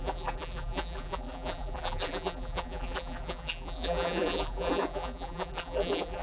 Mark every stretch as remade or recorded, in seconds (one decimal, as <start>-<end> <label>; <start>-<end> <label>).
0.0-6.2 remade